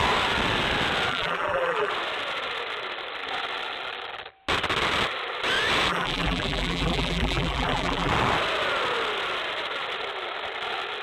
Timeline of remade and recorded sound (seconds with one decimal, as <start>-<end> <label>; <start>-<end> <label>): 0.0-1.1 recorded; 1.1-1.9 remade; 1.9-5.9 recorded; 5.9-8.1 remade; 8.1-11.0 recorded